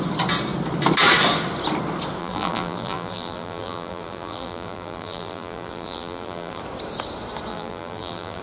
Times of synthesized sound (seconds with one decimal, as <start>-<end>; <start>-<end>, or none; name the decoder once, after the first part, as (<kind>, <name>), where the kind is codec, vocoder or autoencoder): 2.2-6.6 (vocoder, BigVGAN v2); 7.5-8.4